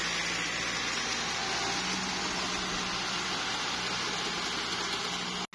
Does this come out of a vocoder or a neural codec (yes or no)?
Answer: no